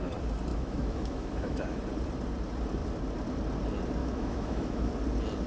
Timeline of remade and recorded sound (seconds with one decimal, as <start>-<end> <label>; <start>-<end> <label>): 0.0-0.5 recorded; 0.5-1.8 remade; 1.8-4.0 recorded; 4.0-4.9 remade; 4.9-5.5 recorded